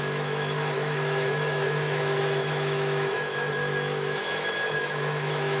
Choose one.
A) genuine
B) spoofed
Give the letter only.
B